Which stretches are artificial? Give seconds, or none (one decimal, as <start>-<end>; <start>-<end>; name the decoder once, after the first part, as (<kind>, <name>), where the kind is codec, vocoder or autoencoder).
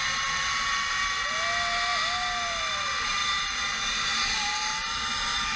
none